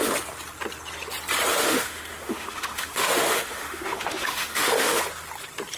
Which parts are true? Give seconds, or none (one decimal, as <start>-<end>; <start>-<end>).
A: 0.0-1.5; 5.0-5.8